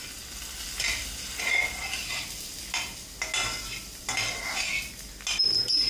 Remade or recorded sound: recorded